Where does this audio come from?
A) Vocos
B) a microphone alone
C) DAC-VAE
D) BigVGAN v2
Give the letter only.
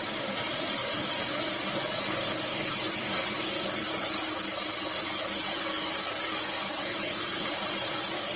D